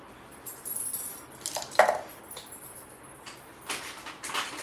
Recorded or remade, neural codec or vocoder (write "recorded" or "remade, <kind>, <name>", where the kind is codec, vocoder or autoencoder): recorded